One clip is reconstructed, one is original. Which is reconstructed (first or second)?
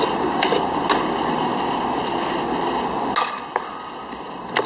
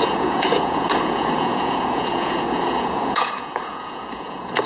second